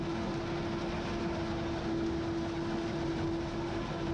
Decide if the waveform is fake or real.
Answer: real